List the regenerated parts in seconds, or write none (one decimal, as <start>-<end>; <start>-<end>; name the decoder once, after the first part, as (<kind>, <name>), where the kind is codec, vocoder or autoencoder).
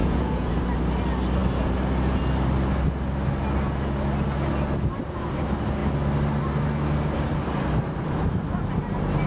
0.0-0.5 (vocoder, Vocos)